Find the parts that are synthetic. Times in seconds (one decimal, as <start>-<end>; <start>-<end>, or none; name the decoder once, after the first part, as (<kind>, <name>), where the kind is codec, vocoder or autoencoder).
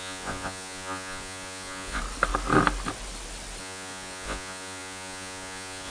0.0-2.0 (vocoder, Vocos); 3.6-5.9